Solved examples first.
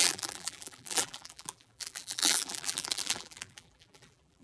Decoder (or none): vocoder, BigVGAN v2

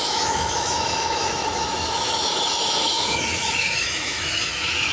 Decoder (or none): autoencoder, DAC-VAE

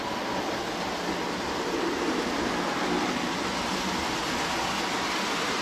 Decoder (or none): none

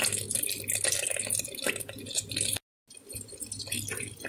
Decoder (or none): none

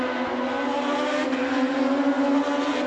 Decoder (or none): none